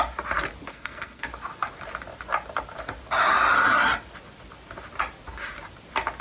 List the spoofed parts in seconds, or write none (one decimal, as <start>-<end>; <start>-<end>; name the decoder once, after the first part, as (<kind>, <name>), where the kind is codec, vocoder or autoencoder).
0.7-1.3 (codec, SNAC)